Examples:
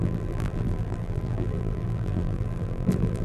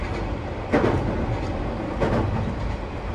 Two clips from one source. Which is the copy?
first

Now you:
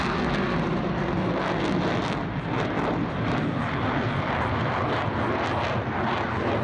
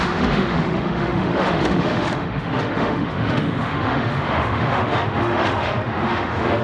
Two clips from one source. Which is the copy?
second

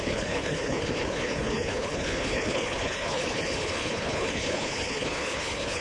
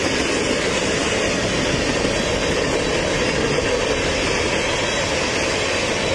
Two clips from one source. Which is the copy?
first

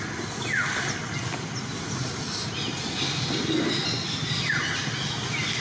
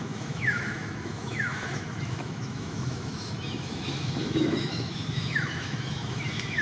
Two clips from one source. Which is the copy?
second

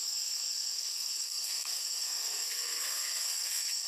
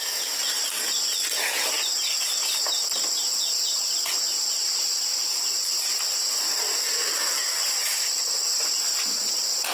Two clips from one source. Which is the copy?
first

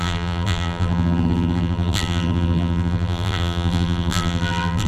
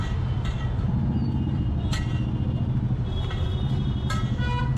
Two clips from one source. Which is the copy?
first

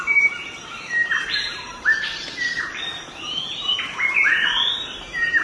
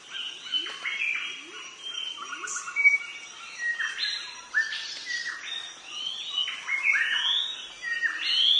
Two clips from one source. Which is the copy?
first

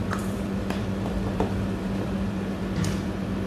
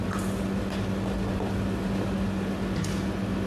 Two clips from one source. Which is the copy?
first